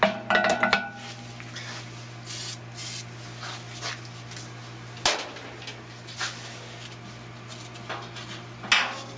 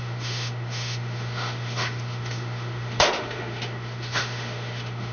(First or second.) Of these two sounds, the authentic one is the first